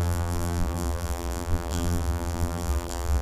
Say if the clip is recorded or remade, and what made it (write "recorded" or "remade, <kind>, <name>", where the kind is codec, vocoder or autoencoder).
remade, vocoder, BigVGAN v2